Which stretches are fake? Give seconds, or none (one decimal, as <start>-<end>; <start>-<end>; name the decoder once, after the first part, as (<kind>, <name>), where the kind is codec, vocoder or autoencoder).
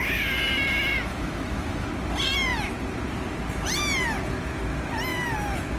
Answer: 1.1-1.9 (autoencoder, DAC-VAE)